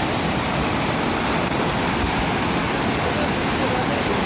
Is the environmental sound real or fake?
real